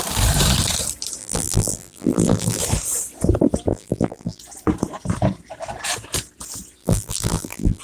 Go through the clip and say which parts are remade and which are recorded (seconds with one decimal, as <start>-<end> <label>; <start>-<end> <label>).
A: 0.0-1.2 recorded; 1.2-2.6 remade; 2.6-3.7 recorded; 3.7-4.4 remade; 4.4-6.8 recorded; 6.8-7.8 remade